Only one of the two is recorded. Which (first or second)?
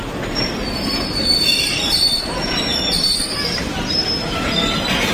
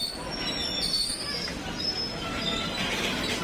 second